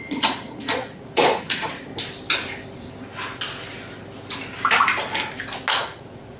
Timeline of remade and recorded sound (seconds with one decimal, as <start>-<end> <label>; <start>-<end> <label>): 0.0-1.9 remade; 1.9-5.7 recorded; 5.7-6.4 remade